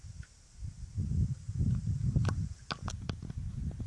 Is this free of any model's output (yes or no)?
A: yes